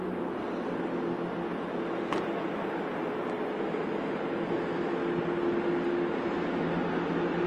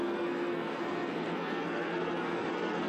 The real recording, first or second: first